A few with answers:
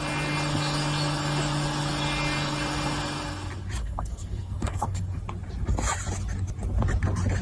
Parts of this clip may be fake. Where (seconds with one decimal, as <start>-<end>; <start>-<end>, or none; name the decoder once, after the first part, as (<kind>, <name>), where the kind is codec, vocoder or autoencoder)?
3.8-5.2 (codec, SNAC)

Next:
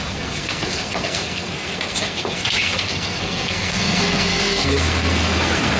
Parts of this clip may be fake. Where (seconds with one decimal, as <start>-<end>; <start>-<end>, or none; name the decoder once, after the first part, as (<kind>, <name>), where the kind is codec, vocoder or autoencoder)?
0.0-5.8 (codec, SNAC)

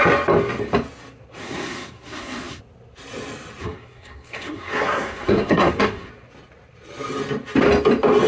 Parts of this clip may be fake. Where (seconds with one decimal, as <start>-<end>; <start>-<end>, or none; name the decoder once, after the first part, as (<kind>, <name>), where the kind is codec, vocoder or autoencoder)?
1.4-2.6 (codec, SNAC); 3.6-6.1

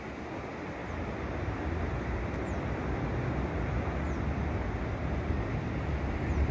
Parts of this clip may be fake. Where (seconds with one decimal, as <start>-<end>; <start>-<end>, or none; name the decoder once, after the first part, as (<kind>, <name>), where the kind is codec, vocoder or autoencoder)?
none

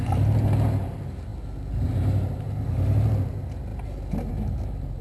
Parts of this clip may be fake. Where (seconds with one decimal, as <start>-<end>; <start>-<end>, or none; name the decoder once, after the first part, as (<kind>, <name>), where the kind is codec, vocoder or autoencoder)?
none

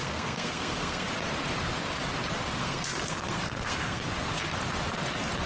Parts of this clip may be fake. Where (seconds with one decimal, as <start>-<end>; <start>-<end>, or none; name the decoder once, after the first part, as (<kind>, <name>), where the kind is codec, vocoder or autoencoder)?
0.0-1.1 (codec, SNAC); 2.6-4.0

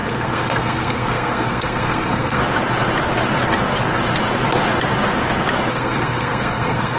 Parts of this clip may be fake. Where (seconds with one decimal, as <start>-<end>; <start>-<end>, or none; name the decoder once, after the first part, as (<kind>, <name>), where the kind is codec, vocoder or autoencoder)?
0.0-2.4 (codec, SNAC); 5.7-7.0

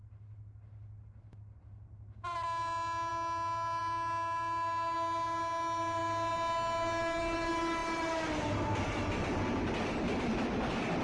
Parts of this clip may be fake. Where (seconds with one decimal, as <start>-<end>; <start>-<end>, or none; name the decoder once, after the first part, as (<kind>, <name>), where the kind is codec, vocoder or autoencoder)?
none